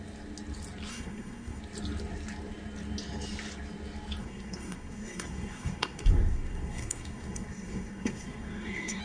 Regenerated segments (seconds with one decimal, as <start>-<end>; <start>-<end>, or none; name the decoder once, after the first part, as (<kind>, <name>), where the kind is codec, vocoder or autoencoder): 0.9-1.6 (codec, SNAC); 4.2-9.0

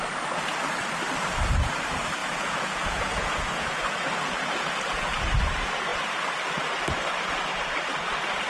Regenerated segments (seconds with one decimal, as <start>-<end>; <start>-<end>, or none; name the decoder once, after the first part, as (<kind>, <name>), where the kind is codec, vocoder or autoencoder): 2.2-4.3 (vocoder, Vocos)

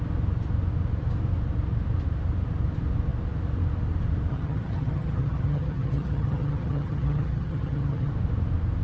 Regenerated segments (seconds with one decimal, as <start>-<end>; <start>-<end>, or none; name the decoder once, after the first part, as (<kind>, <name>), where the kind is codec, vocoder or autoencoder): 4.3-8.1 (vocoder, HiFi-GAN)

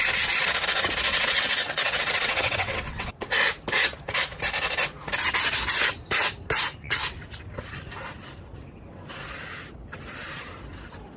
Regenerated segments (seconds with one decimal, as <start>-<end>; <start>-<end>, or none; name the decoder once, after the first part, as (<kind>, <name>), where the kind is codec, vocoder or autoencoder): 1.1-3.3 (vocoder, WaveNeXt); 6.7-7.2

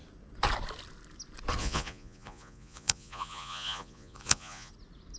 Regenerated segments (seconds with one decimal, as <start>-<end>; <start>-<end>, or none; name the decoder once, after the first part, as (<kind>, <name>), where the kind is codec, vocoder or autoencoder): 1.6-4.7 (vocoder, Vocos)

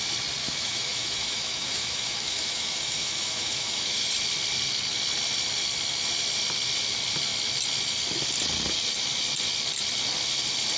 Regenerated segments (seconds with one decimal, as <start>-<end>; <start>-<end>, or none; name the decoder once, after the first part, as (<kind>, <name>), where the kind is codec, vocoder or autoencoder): 0.4-4.1 (autoencoder, DAC-VAE)

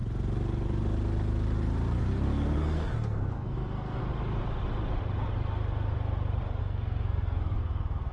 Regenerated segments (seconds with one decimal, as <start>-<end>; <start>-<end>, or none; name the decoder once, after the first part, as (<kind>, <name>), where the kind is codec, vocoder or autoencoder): 2.0-4.0 (codec, SNAC); 6.6-8.1